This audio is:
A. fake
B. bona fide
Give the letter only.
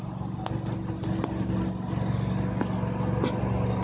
B